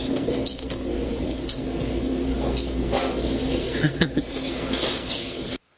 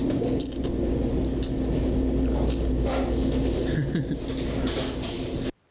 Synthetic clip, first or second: first